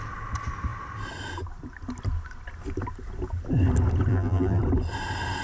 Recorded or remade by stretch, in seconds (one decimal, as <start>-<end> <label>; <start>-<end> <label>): 0.0-4.1 recorded; 4.1-4.6 remade; 4.6-5.4 recorded